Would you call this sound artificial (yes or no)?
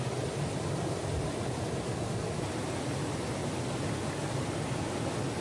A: no